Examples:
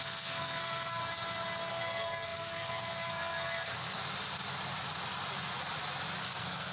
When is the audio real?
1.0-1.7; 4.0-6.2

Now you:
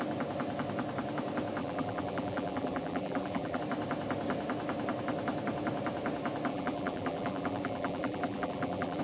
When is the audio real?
0.0-1.6; 3.6-6.5

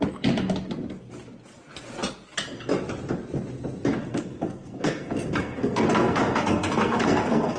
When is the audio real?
0.0-4.0